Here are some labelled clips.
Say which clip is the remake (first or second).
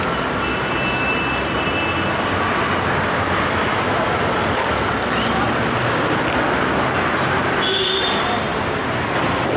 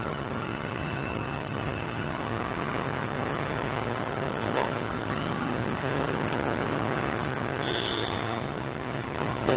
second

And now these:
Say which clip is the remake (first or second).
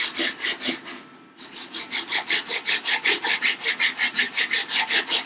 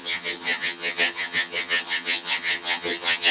second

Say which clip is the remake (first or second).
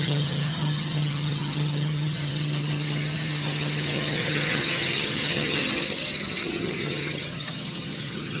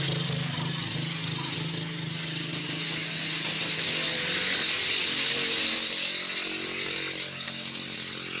first